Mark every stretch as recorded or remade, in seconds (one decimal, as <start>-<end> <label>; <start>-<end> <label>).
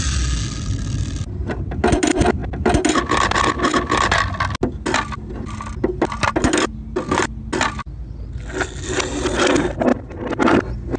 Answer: 0.0-11.0 recorded